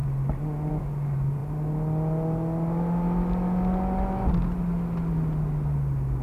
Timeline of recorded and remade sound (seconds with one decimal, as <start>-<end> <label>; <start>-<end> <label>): 0.0-6.2 recorded